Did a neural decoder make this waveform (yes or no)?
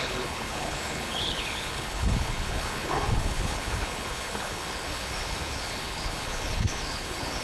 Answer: yes